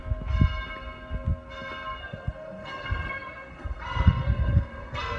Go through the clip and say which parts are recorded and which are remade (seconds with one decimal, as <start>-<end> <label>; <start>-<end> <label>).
0.0-2.0 recorded; 2.0-5.2 remade